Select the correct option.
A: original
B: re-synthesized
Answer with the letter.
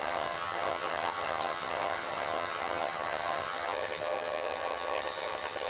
B